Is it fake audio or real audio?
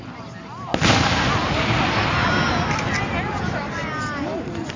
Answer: real